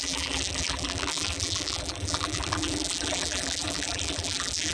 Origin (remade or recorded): remade